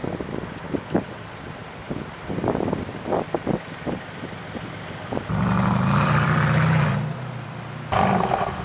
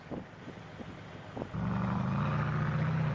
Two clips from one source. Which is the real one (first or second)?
second